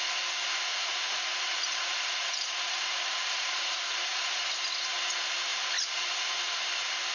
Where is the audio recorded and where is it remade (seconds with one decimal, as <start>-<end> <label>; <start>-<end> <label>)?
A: 0.0-0.7 recorded; 0.7-4.4 remade; 4.4-7.1 recorded